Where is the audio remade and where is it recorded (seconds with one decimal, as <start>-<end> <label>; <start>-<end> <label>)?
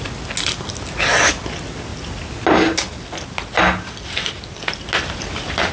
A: 0.0-5.7 recorded